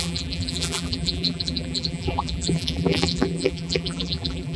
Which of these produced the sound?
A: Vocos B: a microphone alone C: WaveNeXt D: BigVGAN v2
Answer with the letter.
D